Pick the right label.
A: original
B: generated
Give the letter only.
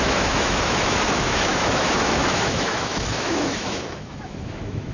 B